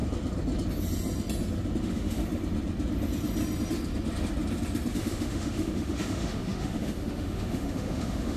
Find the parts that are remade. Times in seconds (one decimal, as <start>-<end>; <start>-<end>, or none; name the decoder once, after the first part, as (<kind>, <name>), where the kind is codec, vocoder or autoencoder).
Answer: 1.8-2.2 (autoencoder, DAC-VAE); 4.9-8.4